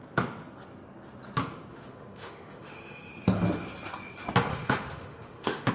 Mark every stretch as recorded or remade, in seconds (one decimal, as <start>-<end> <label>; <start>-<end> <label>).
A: 0.0-1.7 recorded; 1.7-3.1 remade; 3.1-4.5 recorded; 4.5-5.7 remade